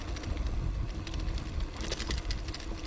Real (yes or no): yes